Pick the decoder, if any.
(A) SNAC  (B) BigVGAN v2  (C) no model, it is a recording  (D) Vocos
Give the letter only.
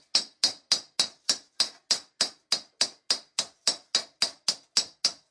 C